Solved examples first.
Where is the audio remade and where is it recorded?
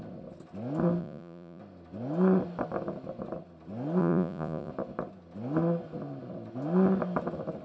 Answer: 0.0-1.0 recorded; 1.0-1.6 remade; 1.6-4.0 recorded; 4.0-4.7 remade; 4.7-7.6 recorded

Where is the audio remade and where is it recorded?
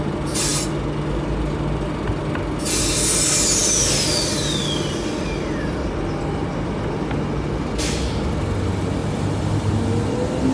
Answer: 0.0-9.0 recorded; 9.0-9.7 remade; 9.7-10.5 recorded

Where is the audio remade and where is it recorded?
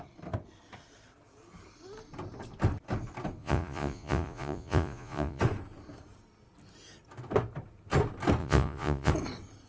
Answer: 0.0-3.4 recorded; 3.4-5.4 remade; 5.4-8.4 recorded; 8.4-9.1 remade; 9.1-9.7 recorded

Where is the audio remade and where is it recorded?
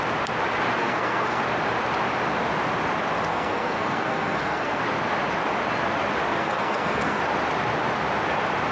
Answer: 0.0-0.8 recorded; 0.8-1.4 remade; 1.4-3.3 recorded; 3.3-4.8 remade; 4.8-6.3 recorded; 6.3-7.2 remade; 7.2-8.7 recorded